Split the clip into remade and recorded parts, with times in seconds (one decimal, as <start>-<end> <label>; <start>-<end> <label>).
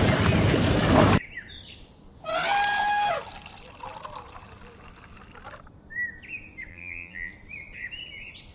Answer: 0.0-6.7 recorded; 6.7-7.3 remade; 7.3-8.5 recorded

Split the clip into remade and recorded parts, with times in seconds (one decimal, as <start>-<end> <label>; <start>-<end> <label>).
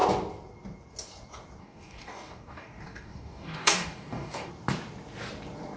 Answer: 0.0-1.6 recorded; 1.6-4.5 remade; 4.5-5.8 recorded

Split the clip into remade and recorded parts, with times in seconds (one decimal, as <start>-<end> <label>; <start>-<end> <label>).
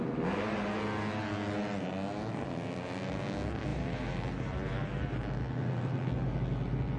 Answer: 0.0-3.7 recorded; 3.7-5.2 remade; 5.2-7.0 recorded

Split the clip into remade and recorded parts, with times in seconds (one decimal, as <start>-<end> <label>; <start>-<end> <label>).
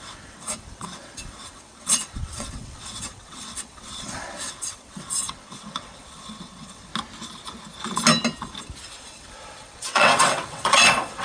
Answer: 0.0-6.9 remade; 6.9-9.0 recorded; 9.0-11.2 remade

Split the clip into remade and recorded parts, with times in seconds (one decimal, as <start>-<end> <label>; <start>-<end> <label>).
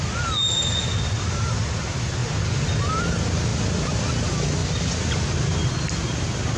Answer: 0.0-6.6 recorded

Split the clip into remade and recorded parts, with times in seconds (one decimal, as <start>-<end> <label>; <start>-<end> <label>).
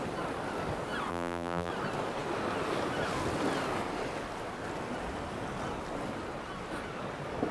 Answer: 0.0-1.1 recorded; 1.1-1.7 remade; 1.7-7.5 recorded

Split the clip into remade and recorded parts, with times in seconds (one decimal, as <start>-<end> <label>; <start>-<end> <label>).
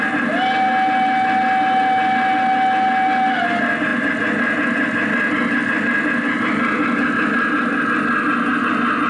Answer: 0.0-9.1 recorded